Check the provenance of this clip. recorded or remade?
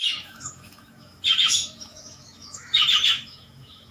remade